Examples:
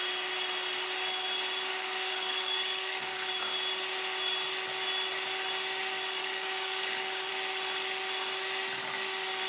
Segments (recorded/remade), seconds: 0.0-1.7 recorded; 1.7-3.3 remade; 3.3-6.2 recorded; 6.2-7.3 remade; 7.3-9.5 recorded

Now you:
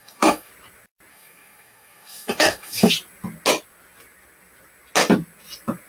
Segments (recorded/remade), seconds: 0.0-0.5 remade; 0.5-1.1 recorded; 1.1-2.9 remade; 2.9-5.9 recorded

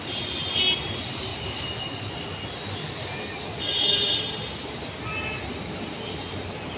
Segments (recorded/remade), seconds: 0.0-1.3 recorded; 1.3-2.0 remade; 2.0-6.8 recorded

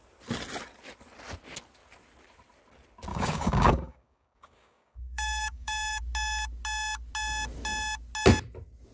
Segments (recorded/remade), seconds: 0.0-3.1 recorded; 3.1-6.0 remade; 6.0-8.9 recorded

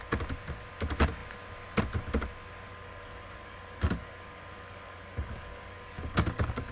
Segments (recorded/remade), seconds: 0.0-2.7 recorded; 2.7-6.7 remade

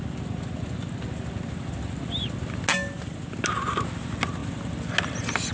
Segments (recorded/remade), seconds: 0.0-5.5 recorded